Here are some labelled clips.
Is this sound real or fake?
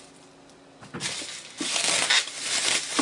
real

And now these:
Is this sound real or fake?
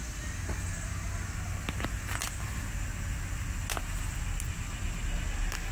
real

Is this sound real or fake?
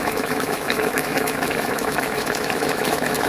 fake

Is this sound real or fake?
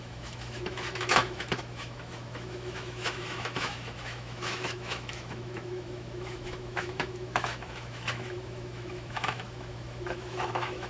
fake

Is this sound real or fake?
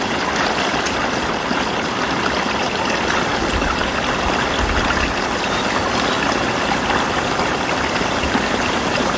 real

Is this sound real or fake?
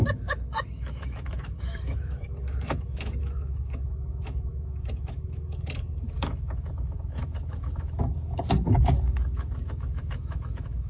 fake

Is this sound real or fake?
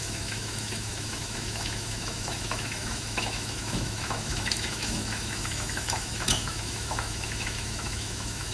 fake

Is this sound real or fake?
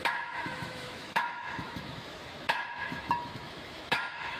fake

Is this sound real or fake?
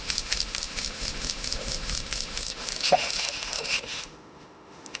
fake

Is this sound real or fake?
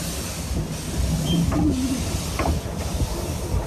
real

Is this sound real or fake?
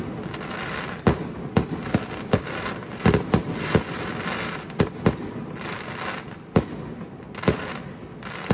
real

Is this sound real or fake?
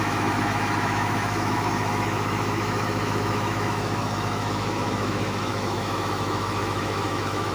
fake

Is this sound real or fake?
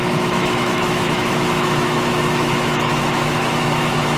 fake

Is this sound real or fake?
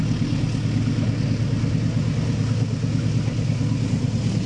real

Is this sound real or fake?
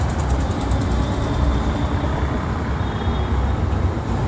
real